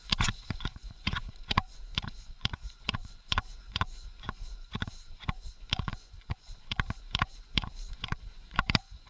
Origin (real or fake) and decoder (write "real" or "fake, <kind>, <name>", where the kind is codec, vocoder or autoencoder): fake, vocoder, Vocos